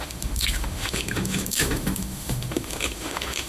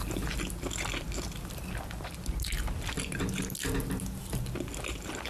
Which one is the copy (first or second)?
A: first